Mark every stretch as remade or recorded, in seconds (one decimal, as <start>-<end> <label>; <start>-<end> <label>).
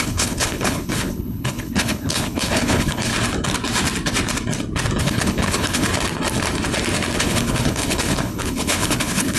0.0-3.1 remade; 3.1-5.0 recorded; 5.0-5.9 remade; 5.9-7.2 recorded; 7.2-9.4 remade